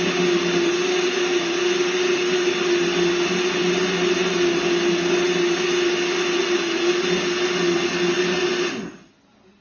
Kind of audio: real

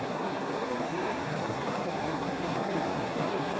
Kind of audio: fake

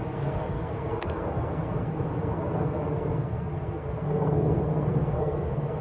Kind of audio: fake